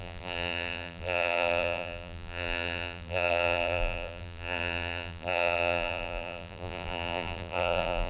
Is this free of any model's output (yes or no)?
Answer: no